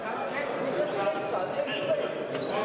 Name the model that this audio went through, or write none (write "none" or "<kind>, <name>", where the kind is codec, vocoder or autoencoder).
none